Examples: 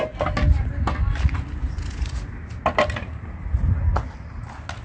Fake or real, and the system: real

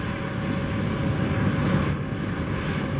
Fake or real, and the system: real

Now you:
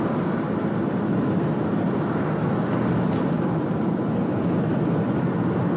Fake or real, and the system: real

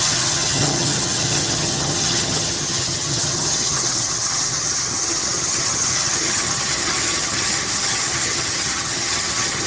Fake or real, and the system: fake, vocoder, HiFi-GAN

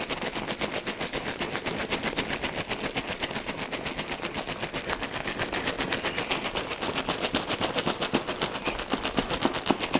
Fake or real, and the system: real